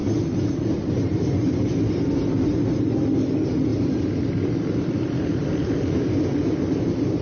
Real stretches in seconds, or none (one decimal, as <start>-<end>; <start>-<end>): 1.9-7.2

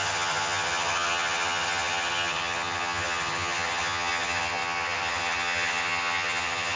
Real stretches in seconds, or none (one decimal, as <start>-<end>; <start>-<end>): none

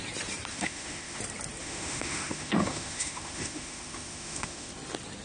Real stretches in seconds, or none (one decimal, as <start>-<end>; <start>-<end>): 0.0-0.5; 1.2-1.6; 4.7-5.2

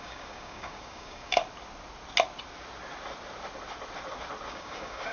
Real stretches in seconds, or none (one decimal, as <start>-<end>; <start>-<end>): 1.4-4.5